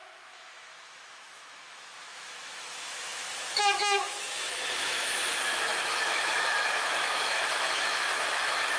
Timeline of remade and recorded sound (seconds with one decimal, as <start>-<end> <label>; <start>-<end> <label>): 0.0-8.8 remade